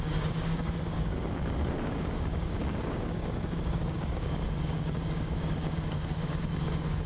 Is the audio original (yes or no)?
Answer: no